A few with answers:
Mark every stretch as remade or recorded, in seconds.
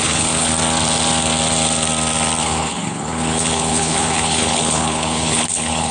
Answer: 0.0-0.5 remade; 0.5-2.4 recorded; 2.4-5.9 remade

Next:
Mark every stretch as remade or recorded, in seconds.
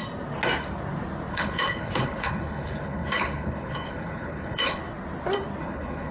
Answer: 0.0-1.3 recorded; 1.3-4.8 remade; 4.8-5.6 recorded; 5.6-6.1 remade